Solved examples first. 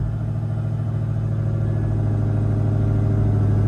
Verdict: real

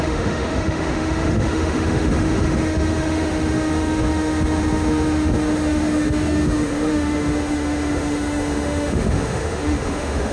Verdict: fake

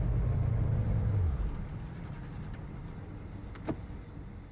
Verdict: real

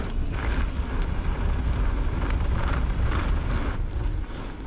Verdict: real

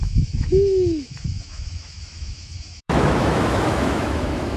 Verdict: fake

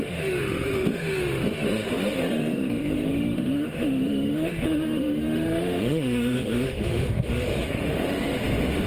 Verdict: fake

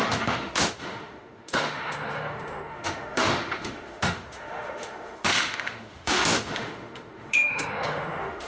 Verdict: fake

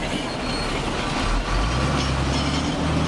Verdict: real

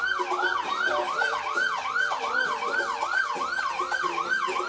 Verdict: real